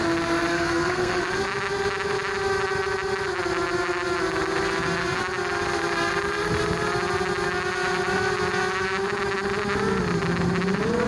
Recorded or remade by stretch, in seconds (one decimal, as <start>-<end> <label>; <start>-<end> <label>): 0.0-0.5 recorded; 0.5-1.2 remade; 1.2-11.1 recorded